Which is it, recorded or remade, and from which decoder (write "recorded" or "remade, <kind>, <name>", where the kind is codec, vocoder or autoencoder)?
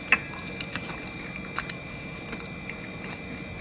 recorded